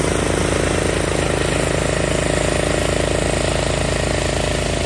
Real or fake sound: real